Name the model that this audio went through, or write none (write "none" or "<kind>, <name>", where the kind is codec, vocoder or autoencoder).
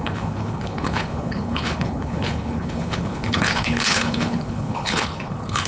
codec, HILCodec